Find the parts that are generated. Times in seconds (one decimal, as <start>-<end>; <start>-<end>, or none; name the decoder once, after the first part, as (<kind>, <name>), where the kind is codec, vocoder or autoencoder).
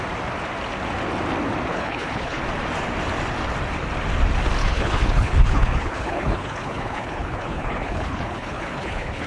1.7-2.4 (codec, HILCodec); 4.6-9.3